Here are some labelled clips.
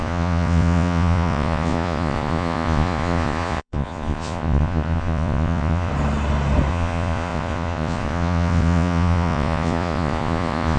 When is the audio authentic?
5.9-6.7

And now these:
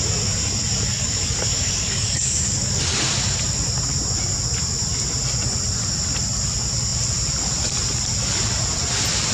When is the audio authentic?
0.0-0.9; 2.8-9.3

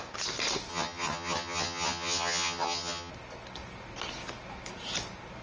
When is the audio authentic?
0.0-0.7; 3.1-5.4

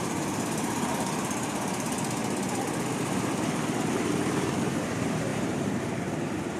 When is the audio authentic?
2.2-4.6

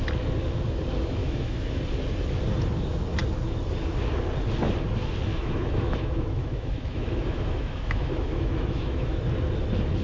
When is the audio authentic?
0.0-1.2; 1.8-5.3; 9.2-10.0

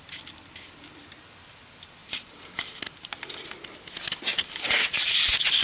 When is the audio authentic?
0.0-2.0; 2.8-4.3; 5.1-5.6